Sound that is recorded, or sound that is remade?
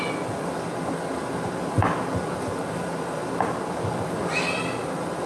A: recorded